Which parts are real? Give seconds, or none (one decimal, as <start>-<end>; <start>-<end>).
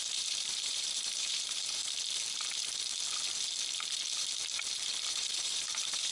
1.8-5.1